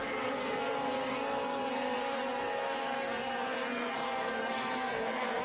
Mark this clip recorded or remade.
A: remade